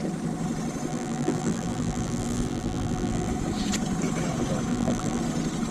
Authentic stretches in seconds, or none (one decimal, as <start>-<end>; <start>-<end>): 0.0-0.9; 3.3-4.7; 5.2-5.7